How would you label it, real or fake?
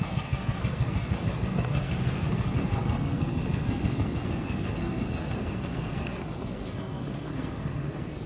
fake